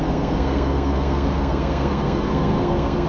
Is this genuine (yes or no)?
no